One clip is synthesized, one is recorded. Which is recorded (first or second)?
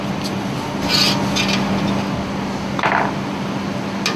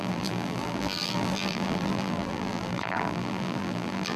first